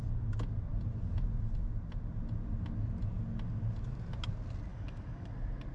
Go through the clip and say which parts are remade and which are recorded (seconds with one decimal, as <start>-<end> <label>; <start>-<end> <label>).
0.0-4.7 recorded; 4.7-5.3 remade; 5.3-5.7 recorded